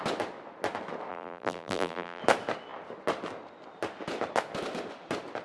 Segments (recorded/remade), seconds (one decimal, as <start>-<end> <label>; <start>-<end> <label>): 0.0-1.1 recorded; 1.1-2.2 remade; 2.2-5.4 recorded